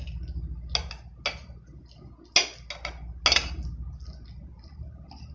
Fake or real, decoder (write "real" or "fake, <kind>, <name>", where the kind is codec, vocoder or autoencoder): real